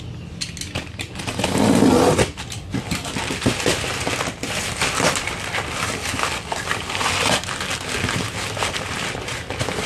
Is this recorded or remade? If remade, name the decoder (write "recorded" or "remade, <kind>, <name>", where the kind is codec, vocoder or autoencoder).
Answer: recorded